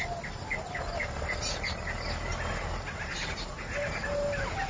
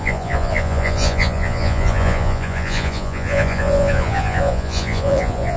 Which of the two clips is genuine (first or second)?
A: first